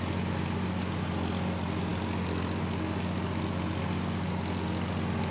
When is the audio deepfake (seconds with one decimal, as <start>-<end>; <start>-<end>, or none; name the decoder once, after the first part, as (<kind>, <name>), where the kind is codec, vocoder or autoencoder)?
none